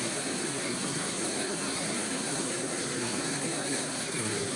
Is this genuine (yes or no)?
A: no